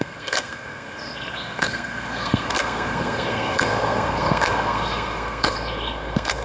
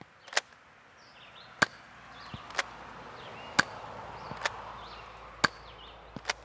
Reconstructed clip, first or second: first